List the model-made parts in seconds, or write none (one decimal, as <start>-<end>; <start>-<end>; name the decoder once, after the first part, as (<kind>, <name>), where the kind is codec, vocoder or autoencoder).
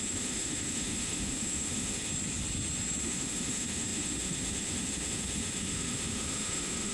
0.0-2.1 (autoencoder, DAC-VAE); 3.0-6.9